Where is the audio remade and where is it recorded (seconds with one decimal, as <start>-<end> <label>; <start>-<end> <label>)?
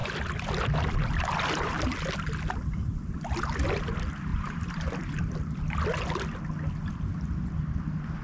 0.0-4.3 recorded; 4.3-5.1 remade; 5.1-8.2 recorded